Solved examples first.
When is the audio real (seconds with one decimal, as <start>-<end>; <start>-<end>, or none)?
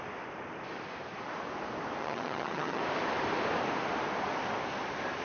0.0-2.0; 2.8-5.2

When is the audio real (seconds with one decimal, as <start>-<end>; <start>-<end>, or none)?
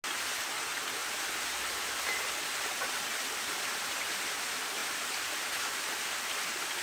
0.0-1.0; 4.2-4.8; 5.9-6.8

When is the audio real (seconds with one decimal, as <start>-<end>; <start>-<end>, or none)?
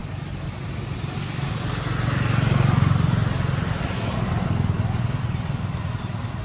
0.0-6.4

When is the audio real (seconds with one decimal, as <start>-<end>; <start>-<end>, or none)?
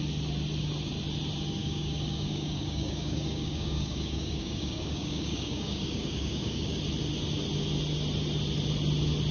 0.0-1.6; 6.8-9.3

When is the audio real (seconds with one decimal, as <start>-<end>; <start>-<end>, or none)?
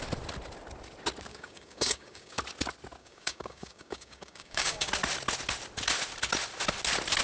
0.0-1.3; 2.4-3.0; 4.9-7.2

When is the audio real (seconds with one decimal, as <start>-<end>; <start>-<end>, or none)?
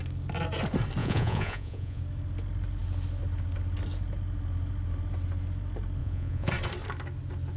0.0-1.0; 2.0-6.0; 6.5-7.6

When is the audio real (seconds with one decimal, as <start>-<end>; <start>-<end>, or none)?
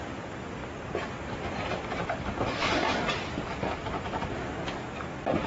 0.6-1.2; 4.6-5.5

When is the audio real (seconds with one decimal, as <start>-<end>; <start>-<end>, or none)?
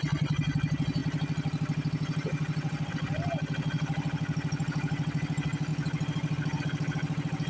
0.0-7.5